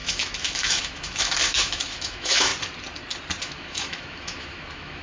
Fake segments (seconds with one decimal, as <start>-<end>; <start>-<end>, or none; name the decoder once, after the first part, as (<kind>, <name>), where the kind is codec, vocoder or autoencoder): 0.0-2.5 (autoencoder, DAC-VAE); 3.4-5.0